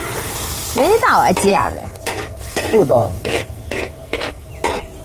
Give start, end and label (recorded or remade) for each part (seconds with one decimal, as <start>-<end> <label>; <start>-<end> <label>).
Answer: 0.0-1.5 recorded; 1.5-4.5 remade; 4.5-5.0 recorded